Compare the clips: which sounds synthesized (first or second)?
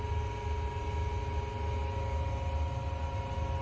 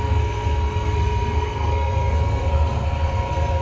second